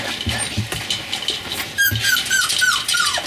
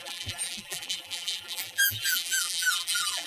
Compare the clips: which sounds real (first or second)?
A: first